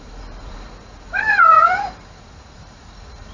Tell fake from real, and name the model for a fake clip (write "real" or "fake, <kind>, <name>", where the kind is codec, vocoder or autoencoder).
fake, vocoder, Vocos